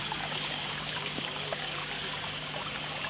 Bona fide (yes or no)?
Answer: no